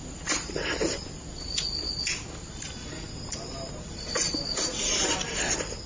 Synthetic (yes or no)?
no